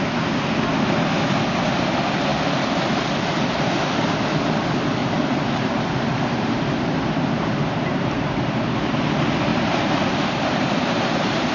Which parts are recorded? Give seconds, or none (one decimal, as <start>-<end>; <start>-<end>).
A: 0.0-5.0; 8.3-9.5

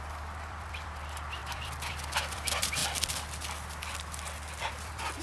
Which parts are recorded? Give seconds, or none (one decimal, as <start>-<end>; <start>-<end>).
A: 2.8-4.6

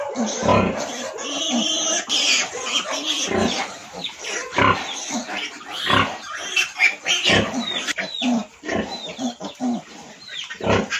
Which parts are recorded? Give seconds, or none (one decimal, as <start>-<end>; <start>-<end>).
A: 0.0-11.0

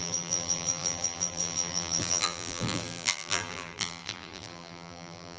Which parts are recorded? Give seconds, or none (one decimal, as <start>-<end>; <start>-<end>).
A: none

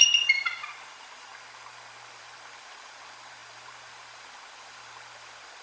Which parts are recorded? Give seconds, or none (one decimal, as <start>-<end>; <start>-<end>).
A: 1.3-2.1

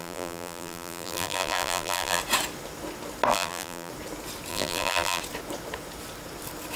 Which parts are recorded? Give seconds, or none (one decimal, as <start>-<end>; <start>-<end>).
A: 2.2-3.3; 3.9-4.5; 5.2-6.8

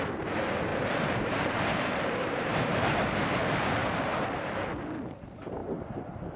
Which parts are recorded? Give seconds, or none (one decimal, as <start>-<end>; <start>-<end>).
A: 0.0-0.7; 3.0-3.8; 4.6-6.4

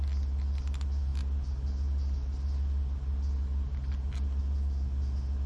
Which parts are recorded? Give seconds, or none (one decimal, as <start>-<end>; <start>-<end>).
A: 0.0-5.5